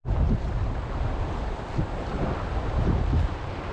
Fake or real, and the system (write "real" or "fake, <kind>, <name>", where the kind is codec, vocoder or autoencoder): real